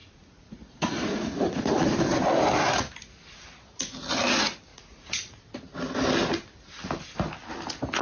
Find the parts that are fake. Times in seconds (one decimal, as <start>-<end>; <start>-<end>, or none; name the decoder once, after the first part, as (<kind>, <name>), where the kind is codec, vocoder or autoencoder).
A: 0.0-1.8 (vocoder, Vocos); 4.7-5.4